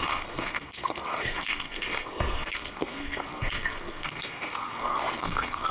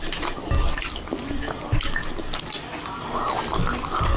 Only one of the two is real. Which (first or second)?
second